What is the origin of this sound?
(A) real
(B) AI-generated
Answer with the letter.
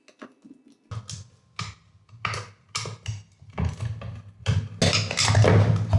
A